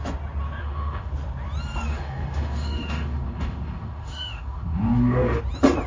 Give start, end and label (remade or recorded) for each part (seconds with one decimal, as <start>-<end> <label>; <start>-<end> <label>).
0.0-0.6 recorded; 0.6-1.1 remade; 1.1-1.9 recorded; 1.9-5.4 remade; 5.4-5.9 recorded